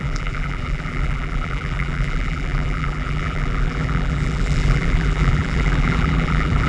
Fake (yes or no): yes